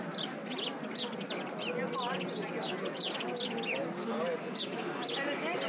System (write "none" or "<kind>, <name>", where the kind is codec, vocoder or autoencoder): none